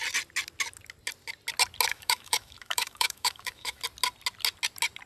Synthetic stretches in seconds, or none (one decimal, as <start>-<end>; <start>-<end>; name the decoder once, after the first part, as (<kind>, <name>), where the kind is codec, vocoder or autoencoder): 1.9-3.8 (autoencoder, DAC-VAE)